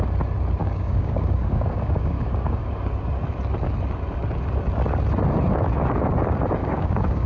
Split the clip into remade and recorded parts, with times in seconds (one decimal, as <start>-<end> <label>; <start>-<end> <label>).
0.0-0.6 recorded; 0.6-2.8 remade; 2.8-6.6 recorded; 6.6-7.3 remade